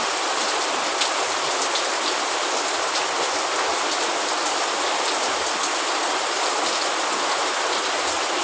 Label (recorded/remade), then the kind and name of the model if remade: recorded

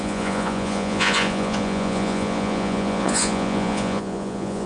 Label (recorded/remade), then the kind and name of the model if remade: remade, vocoder, Vocos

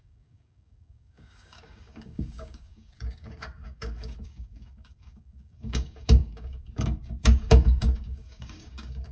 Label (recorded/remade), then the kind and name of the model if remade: remade, codec, DAC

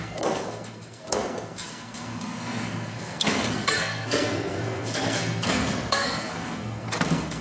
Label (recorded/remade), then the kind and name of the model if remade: remade, codec, SNAC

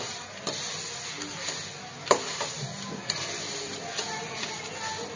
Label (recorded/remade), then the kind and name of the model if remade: recorded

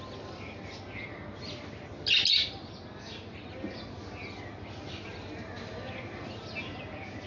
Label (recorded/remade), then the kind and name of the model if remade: recorded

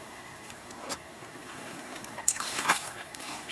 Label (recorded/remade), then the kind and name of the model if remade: remade, codec, SNAC